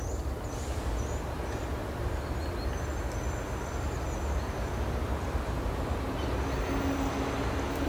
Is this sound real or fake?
real